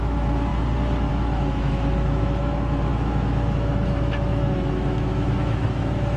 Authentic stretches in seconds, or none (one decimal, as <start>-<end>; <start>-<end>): 0.5-1.1